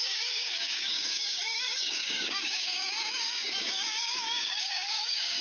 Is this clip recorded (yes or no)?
no